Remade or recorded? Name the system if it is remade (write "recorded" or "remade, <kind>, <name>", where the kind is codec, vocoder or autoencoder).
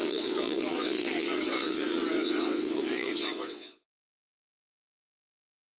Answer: remade, vocoder, WaveNeXt